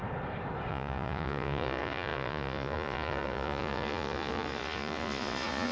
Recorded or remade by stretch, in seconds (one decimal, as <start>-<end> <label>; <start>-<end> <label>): 0.0-0.7 recorded; 0.7-5.7 remade